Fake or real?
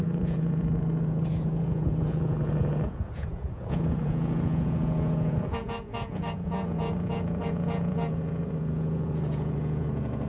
fake